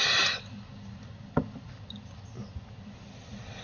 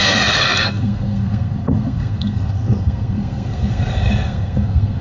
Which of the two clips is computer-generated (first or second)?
second